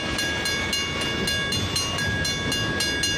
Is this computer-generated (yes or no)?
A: no